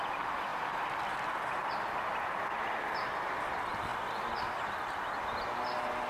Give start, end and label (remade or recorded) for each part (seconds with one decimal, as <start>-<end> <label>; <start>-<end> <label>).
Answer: 0.0-0.5 recorded; 0.5-1.2 remade; 1.2-6.1 recorded